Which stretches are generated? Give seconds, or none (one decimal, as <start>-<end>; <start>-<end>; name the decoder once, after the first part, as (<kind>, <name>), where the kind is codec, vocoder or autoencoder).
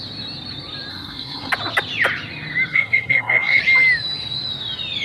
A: 0.9-1.5 (codec, SNAC); 2.7-3.6